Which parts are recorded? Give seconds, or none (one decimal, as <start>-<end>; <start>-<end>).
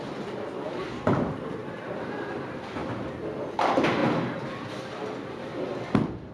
0.0-6.3